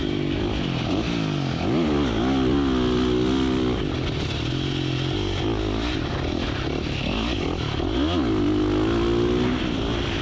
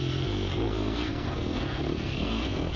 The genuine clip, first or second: first